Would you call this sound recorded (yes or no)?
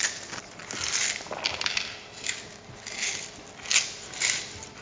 yes